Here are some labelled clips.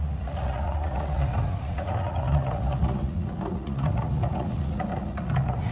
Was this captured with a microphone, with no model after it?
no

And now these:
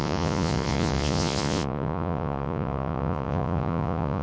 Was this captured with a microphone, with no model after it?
no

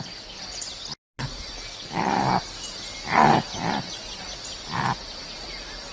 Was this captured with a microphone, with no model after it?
yes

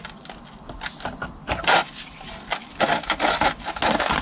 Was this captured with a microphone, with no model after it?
yes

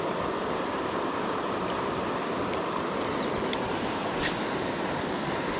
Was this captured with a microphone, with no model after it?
yes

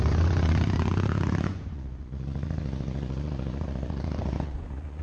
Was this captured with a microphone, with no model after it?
no